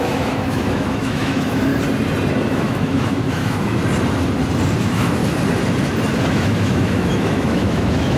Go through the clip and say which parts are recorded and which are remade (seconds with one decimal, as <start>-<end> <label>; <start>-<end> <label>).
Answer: 0.0-1.7 remade; 1.7-2.5 recorded; 2.5-3.8 remade; 3.8-4.8 recorded; 4.8-5.2 remade; 5.2-6.3 recorded; 6.3-8.2 remade